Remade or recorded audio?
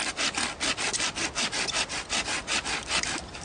recorded